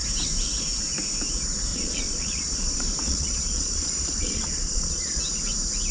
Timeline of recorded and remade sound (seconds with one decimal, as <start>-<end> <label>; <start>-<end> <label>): 0.0-1.7 recorded; 1.7-5.2 remade; 5.2-5.9 recorded